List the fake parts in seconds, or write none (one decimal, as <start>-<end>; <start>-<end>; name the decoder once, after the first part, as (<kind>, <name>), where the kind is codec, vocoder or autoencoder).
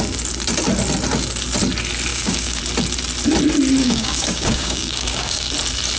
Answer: 2.1-2.6 (codec, DAC); 3.8-5.5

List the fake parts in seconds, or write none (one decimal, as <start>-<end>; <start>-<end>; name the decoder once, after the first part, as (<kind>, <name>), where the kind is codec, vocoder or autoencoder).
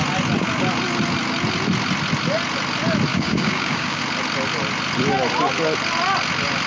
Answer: 3.1-4.0 (codec, DAC)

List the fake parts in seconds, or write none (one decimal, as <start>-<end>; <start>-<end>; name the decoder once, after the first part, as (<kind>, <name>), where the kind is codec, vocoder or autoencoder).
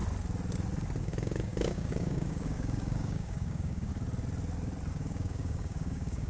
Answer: 1.0-3.9 (codec, DAC); 4.9-6.3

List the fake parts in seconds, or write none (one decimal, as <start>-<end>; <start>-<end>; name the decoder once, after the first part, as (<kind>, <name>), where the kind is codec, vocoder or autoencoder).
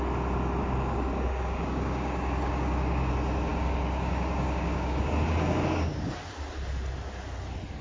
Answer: 0.6-3.1 (codec, DAC); 3.5-5.9